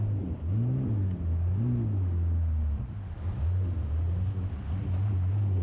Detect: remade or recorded recorded